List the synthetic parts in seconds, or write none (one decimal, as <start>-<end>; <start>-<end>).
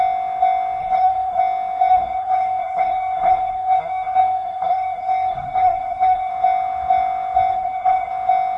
0.8-1.4; 1.9-6.3; 7.5-8.1